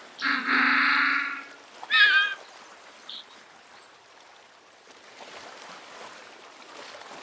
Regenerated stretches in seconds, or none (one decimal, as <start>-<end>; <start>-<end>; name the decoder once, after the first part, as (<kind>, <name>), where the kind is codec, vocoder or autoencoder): none